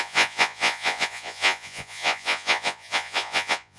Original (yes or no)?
no